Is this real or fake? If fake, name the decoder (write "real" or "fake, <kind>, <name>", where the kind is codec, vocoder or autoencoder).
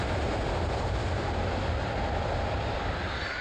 real